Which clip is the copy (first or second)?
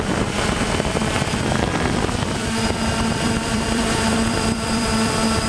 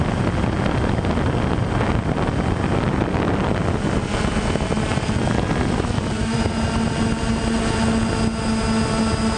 first